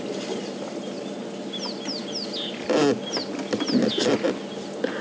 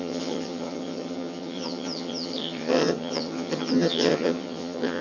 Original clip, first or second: first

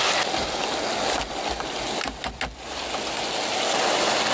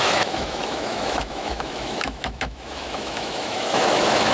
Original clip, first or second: first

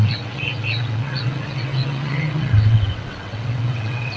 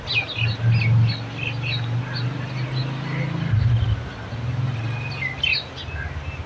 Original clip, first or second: second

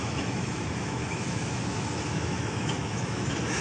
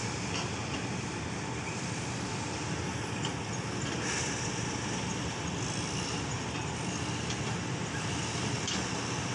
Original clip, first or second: second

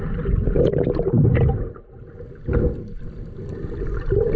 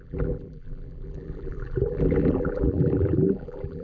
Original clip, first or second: first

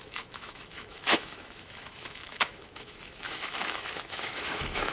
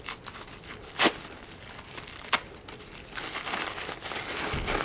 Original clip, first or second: second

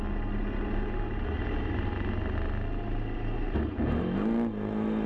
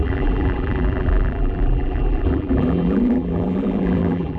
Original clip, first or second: first